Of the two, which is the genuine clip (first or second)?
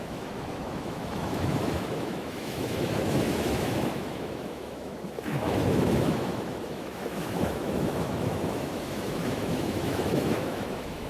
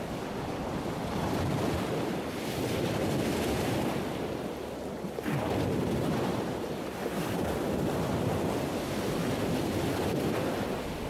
second